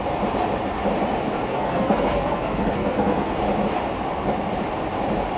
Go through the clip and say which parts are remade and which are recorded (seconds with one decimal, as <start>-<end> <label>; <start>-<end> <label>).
0.0-1.5 recorded; 1.5-3.3 remade; 3.3-5.4 recorded